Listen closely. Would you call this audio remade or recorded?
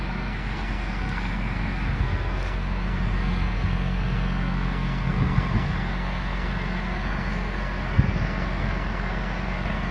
remade